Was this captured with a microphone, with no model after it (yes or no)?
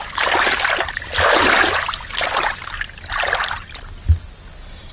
yes